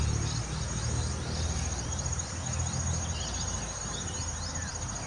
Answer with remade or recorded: recorded